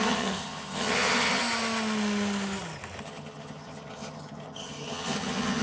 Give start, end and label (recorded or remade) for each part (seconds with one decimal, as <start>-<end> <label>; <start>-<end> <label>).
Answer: 0.0-1.4 remade; 1.4-3.0 recorded; 3.0-5.6 remade

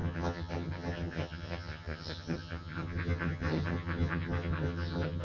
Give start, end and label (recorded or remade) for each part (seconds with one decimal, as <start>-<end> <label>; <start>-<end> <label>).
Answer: 0.0-5.2 remade

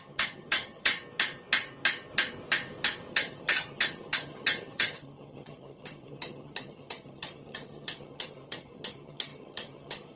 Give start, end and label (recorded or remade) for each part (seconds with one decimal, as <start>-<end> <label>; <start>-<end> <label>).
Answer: 0.0-0.9 remade; 0.9-3.1 recorded; 3.1-10.2 remade

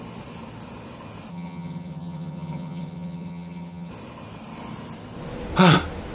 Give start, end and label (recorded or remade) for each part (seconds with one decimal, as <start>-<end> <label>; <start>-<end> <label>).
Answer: 0.0-1.3 recorded; 1.3-3.9 remade; 3.9-6.1 recorded